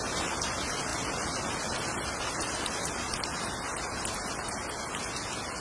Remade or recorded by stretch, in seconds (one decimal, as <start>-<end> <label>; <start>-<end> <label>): 0.0-5.6 recorded